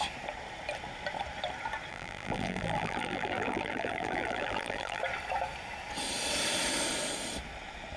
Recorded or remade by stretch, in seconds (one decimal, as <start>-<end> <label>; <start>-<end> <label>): 0.0-1.9 recorded; 1.9-5.0 remade; 5.0-8.0 recorded